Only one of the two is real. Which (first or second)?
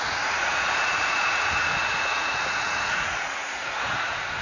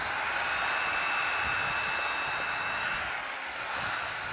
second